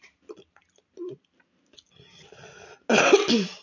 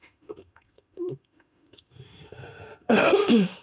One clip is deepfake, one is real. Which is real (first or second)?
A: first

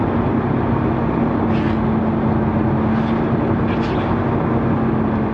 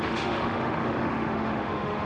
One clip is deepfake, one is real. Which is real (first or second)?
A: first